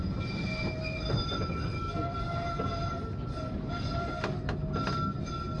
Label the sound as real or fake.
real